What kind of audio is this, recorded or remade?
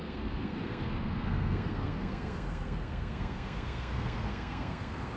remade